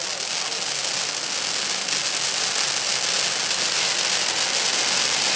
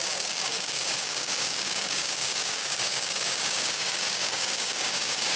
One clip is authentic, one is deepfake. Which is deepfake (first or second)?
second